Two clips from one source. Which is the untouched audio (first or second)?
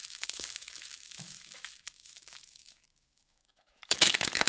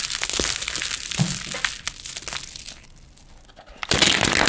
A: second